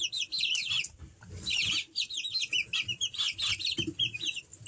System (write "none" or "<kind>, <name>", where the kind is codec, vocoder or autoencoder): none